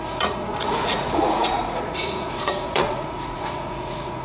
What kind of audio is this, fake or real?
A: fake